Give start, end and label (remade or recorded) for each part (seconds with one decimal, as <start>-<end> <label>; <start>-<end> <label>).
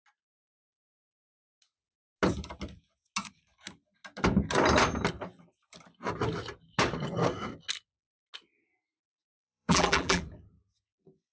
0.0-8.7 recorded; 8.7-10.2 remade; 10.2-11.3 recorded